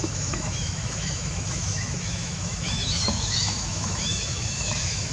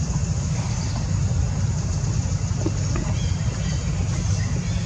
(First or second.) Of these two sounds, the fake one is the first